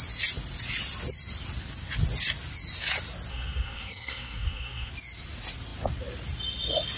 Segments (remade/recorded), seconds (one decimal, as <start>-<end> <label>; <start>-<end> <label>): 0.0-3.3 recorded; 3.3-4.9 remade; 4.9-7.0 recorded